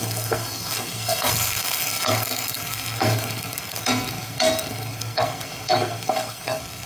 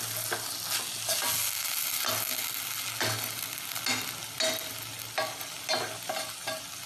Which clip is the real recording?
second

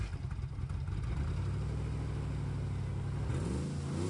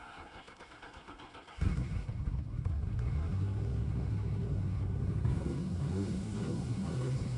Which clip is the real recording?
first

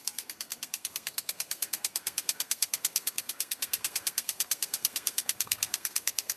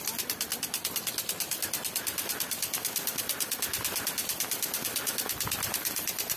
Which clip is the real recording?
second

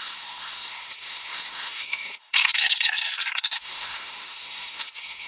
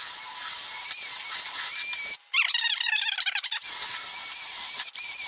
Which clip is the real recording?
second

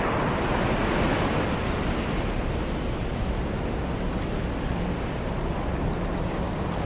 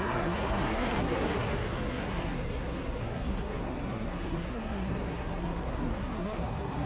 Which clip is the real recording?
first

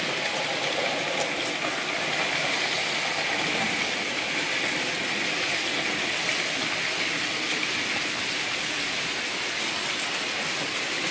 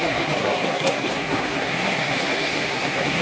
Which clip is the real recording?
first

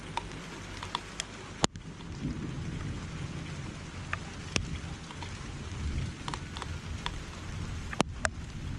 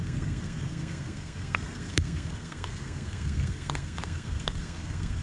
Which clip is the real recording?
first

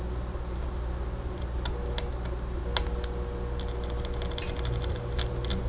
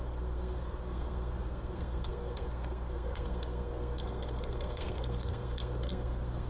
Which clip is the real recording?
first